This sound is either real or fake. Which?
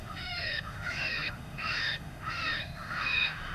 fake